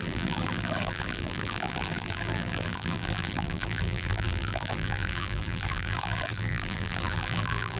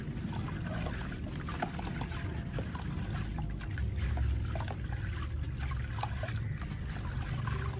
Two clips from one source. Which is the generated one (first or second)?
first